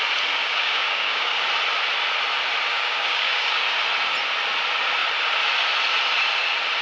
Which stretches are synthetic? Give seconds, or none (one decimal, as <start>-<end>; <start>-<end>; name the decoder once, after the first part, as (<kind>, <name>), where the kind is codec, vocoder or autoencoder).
0.4-1.4 (codec, DAC); 2.7-3.5